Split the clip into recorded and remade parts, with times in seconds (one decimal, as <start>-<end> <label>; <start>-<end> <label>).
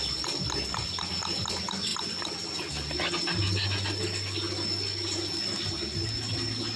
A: 0.0-6.8 recorded